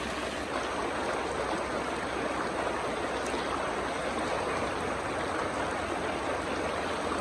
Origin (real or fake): real